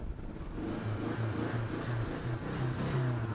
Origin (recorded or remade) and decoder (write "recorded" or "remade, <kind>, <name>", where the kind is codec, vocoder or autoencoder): recorded